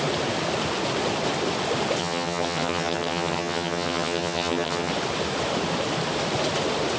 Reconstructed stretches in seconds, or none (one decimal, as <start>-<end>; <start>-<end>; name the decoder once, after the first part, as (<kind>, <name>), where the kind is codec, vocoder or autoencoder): 2.0-4.9 (vocoder, HiFi-GAN)